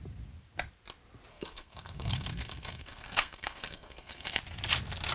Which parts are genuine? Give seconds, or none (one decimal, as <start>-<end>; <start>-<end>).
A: 0.0-1.3; 4.4-5.1